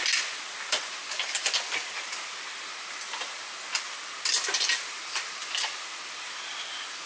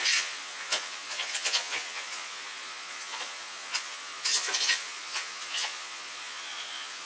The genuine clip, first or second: first